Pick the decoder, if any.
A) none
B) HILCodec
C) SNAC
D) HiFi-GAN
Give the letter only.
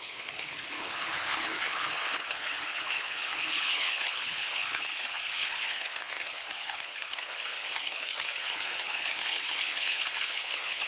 B